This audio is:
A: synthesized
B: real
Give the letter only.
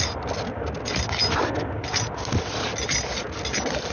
B